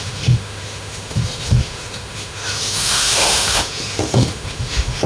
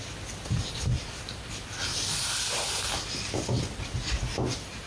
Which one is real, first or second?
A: second